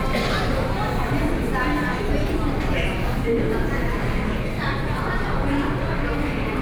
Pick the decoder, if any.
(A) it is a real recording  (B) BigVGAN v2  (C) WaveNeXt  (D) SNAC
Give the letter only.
A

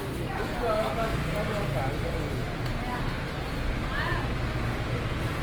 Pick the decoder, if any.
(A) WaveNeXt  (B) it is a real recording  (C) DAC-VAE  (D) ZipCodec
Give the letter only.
B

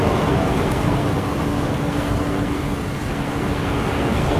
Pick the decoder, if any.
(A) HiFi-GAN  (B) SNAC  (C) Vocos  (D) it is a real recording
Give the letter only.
B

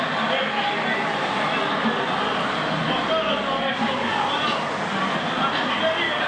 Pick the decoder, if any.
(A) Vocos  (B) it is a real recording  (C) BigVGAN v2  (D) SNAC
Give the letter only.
B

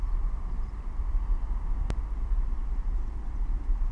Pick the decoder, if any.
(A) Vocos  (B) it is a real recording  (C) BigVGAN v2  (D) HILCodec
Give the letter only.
C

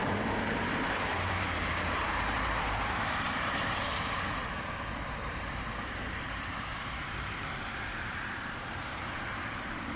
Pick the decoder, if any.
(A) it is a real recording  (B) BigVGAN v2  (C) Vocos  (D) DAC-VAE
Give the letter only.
B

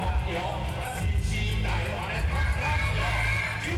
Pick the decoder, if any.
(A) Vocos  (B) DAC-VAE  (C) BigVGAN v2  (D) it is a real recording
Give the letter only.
D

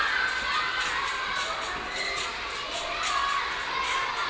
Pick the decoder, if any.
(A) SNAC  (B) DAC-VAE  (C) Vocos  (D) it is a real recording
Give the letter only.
D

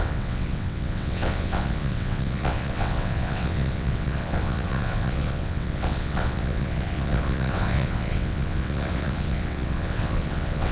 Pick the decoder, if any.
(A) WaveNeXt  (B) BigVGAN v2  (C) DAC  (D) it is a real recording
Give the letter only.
A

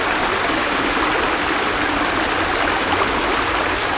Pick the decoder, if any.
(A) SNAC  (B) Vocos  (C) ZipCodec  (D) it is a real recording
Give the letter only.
D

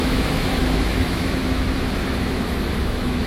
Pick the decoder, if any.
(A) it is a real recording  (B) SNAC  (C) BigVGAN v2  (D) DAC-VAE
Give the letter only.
D